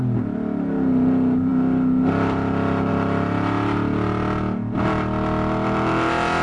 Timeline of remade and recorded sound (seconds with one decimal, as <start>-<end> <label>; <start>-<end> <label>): 0.0-6.4 recorded

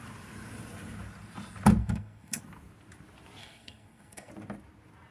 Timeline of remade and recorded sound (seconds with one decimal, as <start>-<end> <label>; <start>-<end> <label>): 0.0-1.8 recorded; 1.8-2.4 remade; 2.4-3.4 recorded; 3.4-4.3 remade; 4.3-5.1 recorded

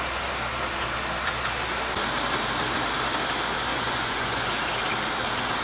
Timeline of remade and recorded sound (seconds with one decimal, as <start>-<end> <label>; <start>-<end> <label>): 0.0-3.7 recorded; 3.7-4.5 remade; 4.5-5.6 recorded

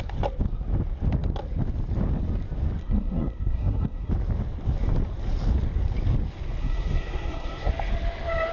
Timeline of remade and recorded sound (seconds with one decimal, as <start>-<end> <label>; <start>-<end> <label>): 0.0-2.8 recorded; 2.8-4.1 remade; 4.1-6.6 recorded; 6.6-7.7 remade; 7.7-8.5 recorded

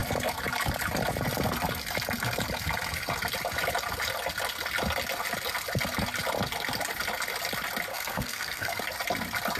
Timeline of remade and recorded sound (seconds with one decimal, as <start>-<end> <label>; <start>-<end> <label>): 0.0-7.9 recorded; 7.9-8.8 remade; 8.8-9.6 recorded

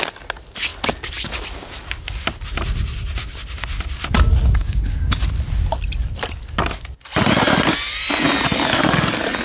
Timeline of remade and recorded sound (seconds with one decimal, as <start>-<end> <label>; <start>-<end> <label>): 0.0-4.6 recorded; 4.6-5.1 remade; 5.1-9.4 recorded

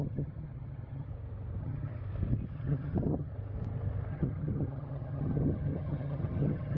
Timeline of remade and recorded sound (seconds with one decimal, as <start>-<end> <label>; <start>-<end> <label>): 0.0-1.1 remade; 1.1-1.6 recorded; 1.6-2.0 remade; 2.0-2.5 recorded; 2.5-3.3 remade; 3.3-4.1 recorded; 4.1-6.8 remade

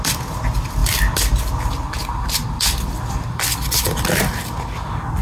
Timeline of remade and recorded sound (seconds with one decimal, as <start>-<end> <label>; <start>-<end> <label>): 0.0-5.2 recorded